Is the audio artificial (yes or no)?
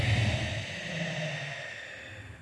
no